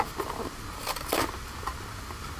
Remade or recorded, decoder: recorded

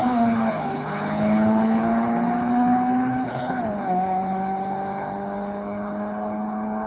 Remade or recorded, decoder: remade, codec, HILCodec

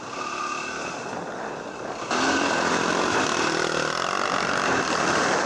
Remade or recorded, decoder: recorded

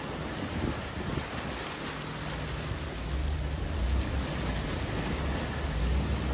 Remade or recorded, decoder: recorded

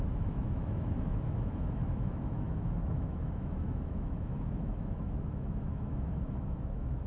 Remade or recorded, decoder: remade, autoencoder, DAC-VAE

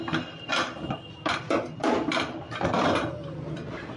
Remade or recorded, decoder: remade, vocoder, BigVGAN v2